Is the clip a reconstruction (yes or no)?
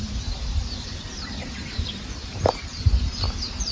yes